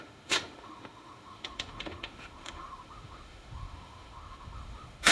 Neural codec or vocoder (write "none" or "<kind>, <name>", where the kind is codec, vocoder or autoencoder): autoencoder, DAC-VAE